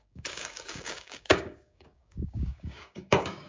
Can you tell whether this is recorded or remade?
remade